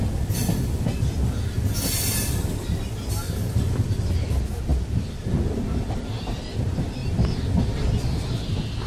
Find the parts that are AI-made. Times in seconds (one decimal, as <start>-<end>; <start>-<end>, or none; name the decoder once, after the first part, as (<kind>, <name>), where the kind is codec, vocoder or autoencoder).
none